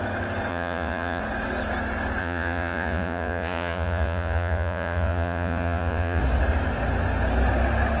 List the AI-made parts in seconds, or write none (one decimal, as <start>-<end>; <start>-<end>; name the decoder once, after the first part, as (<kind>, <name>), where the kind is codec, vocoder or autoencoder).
0.5-1.2 (vocoder, Vocos); 2.2-6.2